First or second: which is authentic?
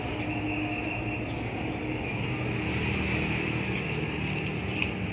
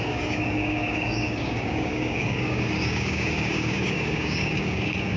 first